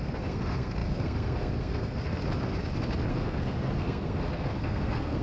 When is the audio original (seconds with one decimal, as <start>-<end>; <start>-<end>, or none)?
2.2-3.1